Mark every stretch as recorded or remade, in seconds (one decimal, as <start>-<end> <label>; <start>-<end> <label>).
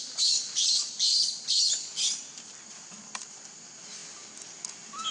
0.0-1.9 remade; 1.9-3.2 recorded; 3.2-4.0 remade; 4.0-5.1 recorded